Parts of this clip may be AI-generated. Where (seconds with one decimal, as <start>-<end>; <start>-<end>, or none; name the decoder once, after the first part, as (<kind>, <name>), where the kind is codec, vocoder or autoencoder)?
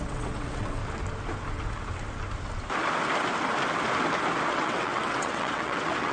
0.0-0.8 (vocoder, WaveNeXt); 4.5-6.1